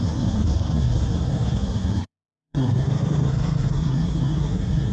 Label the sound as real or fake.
fake